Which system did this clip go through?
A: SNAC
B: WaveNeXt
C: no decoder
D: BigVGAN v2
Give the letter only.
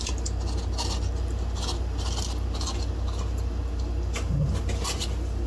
C